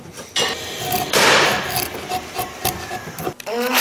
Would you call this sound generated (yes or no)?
no